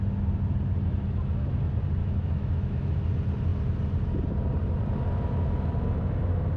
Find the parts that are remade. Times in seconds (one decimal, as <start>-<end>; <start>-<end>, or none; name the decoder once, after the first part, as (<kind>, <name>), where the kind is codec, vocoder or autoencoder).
2.0-3.0 (autoencoder, DAC-VAE)

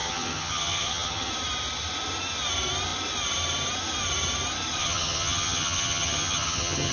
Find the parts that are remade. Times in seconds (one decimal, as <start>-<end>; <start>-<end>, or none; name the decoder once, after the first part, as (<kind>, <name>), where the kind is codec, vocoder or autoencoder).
0.0-1.3 (vocoder, HiFi-GAN); 4.8-6.9

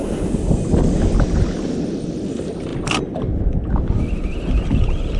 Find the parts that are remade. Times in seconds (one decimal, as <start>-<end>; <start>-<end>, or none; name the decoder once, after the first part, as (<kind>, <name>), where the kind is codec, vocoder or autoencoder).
none

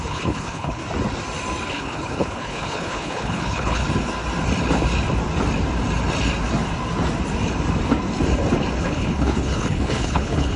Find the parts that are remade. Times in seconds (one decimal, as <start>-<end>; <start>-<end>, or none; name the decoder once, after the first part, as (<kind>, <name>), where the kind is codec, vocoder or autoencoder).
0.0-0.8 (codec, HILCodec); 1.7-3.8; 8.8-10.6

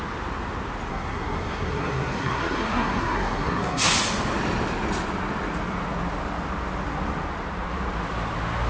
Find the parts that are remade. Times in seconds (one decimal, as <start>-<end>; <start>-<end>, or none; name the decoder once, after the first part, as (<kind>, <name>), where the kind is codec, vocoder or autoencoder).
0.9-3.9 (codec, SNAC)

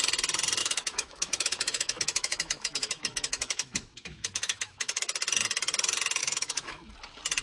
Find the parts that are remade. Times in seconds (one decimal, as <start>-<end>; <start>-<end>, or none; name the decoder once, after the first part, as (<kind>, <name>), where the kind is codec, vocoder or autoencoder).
0.6-5.0 (autoencoder, DAC-VAE); 6.2-6.9